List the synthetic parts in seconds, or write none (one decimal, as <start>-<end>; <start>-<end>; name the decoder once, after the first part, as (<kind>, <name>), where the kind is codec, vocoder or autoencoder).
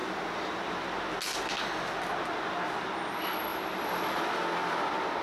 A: 3.5-4.3 (vocoder, BigVGAN v2)